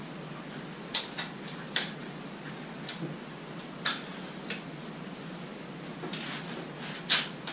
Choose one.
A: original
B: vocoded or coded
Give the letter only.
A